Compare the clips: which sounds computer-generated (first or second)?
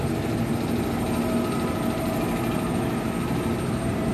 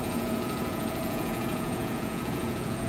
second